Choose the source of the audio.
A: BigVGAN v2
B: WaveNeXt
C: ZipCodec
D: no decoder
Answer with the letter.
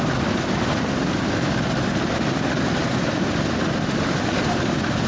D